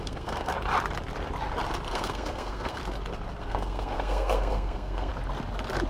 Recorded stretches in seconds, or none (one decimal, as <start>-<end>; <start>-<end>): 0.5-1.9; 2.8-3.4; 5.1-5.9